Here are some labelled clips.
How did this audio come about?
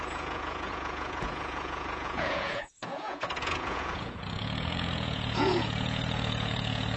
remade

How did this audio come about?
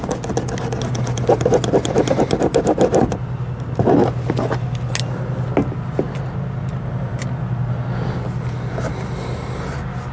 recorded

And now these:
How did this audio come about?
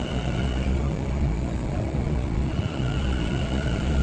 remade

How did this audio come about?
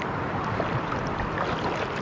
recorded